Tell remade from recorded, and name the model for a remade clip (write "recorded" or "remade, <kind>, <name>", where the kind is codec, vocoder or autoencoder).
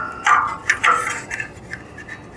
recorded